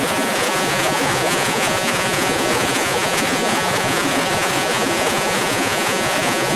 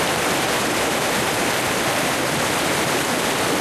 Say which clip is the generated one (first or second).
first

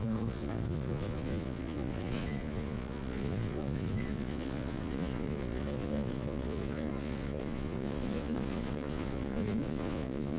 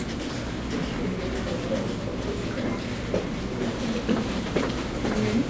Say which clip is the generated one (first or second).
first